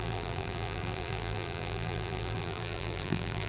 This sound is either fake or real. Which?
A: fake